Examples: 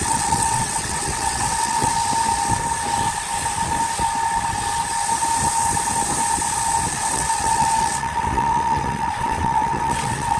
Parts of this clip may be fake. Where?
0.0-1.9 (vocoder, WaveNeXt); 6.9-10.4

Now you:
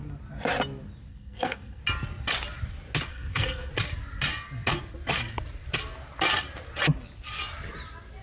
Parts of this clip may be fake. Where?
1.1-1.8 (codec, SNAC); 3.1-3.7

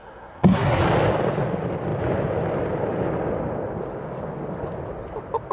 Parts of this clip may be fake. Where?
0.0-0.8 (codec, SNAC)

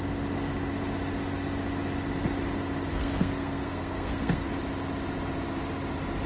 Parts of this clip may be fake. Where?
2.9-4.5 (codec, SNAC)

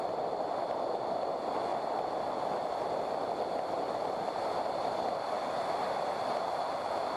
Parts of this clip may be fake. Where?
none

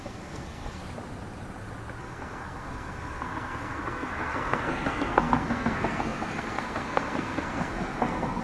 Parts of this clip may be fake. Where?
0.0-0.8 (codec, SNAC); 2.0-8.4

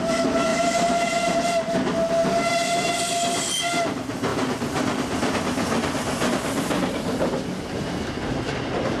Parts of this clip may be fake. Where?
0.5-1.4 (vocoder, BigVGAN v2); 2.2-2.9; 4.3-5.2